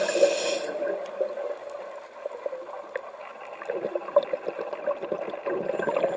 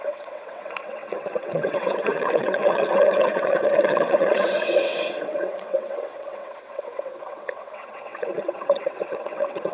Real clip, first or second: first